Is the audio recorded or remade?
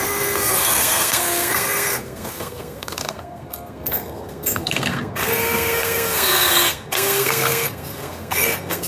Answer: remade